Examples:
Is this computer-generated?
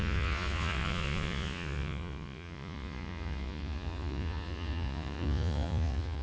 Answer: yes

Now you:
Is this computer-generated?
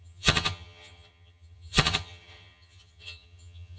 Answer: yes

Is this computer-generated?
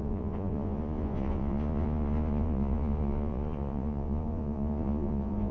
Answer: yes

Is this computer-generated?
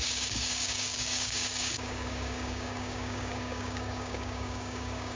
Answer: yes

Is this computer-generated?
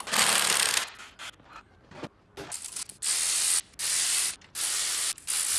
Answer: no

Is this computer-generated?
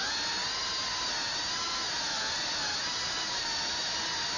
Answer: no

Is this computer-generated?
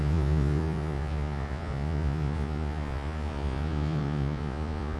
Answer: yes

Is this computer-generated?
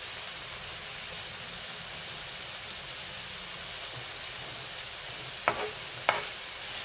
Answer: no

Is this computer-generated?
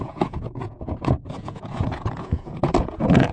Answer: yes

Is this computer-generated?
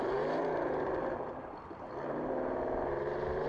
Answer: no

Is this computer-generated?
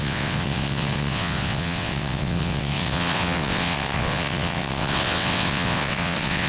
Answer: yes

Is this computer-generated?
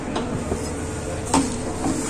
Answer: no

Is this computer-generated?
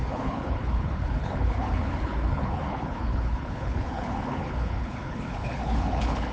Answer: yes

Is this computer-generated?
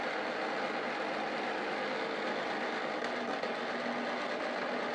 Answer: no